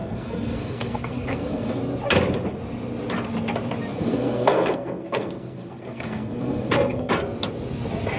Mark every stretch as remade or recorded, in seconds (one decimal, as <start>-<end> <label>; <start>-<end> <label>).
0.0-1.8 remade; 1.8-3.9 recorded; 3.9-7.1 remade; 7.1-8.2 recorded